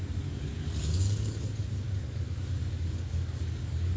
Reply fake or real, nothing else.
fake